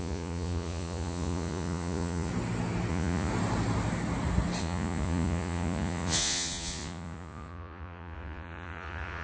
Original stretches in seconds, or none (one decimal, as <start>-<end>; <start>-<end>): 2.3-2.9; 3.3-4.6